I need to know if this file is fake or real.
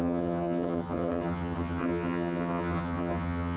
fake